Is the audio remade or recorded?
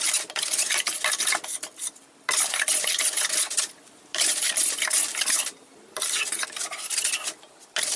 recorded